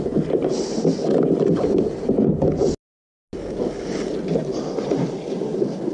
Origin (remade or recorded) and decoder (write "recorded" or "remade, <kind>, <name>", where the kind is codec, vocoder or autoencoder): recorded